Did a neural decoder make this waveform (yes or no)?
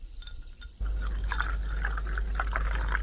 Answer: no